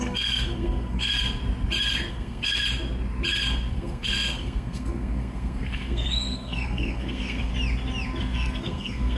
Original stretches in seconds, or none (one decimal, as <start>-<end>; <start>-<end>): 1.1-2.1; 2.6-3.7; 7.5-8.2